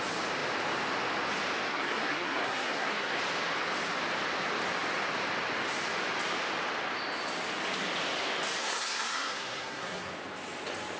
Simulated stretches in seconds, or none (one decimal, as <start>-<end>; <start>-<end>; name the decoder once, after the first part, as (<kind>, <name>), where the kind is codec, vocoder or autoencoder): 1.7-3.2 (codec, SNAC); 8.6-10.1